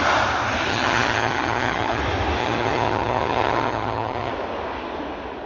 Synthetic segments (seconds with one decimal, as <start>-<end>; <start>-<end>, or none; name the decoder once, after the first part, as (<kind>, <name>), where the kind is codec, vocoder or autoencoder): 0.7-2.0 (vocoder, HiFi-GAN); 2.4-4.3